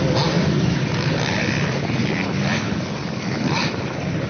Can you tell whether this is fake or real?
real